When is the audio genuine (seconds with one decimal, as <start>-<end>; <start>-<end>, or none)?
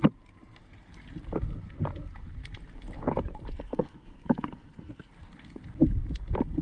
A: 0.0-3.5; 5.1-6.6